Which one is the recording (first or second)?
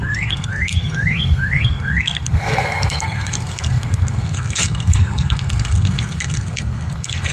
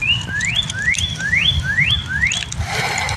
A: second